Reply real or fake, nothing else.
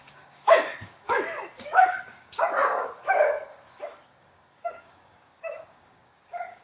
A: fake